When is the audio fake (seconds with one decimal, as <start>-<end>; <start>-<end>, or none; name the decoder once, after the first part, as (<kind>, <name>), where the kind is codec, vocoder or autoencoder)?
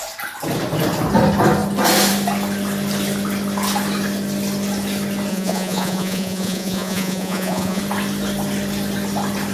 5.3-7.8 (vocoder, Vocos)